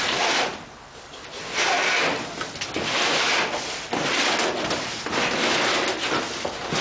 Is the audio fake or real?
real